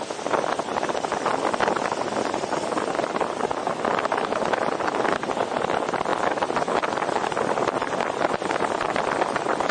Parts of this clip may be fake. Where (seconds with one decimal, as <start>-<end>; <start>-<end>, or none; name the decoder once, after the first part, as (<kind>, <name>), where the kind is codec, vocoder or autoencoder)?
none